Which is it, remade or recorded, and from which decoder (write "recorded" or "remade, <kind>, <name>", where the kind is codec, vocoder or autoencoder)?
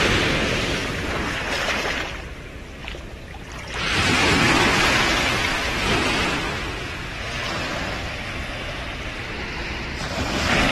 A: remade, vocoder, BigVGAN v2